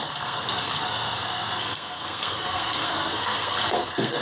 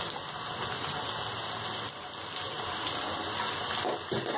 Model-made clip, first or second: first